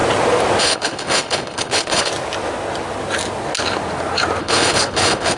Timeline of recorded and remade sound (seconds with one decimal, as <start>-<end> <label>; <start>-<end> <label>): 0.0-0.6 recorded; 0.6-2.1 remade; 2.1-4.4 recorded; 4.4-5.4 remade